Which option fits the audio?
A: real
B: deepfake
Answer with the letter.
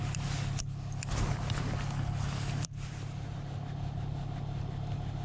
A